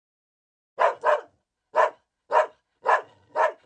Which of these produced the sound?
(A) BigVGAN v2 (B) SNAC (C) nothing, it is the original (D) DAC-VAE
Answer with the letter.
C